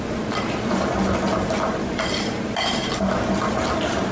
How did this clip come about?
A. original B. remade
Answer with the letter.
A